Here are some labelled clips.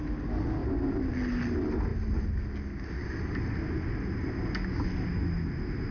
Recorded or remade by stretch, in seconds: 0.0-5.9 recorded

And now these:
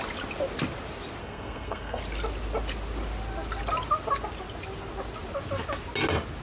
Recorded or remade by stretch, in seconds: 0.0-1.2 recorded; 1.2-2.0 remade; 2.0-6.4 recorded

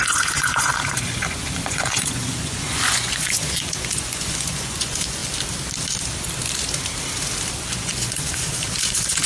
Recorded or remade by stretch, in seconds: 0.0-5.2 remade; 5.2-7.5 recorded; 7.5-9.3 remade

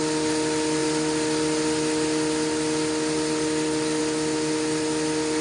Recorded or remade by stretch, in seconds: 0.0-5.4 recorded